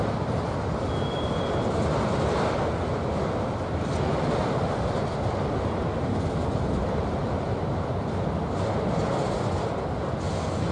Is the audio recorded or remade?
recorded